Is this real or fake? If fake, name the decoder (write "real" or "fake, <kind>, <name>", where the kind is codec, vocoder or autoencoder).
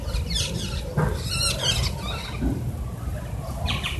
real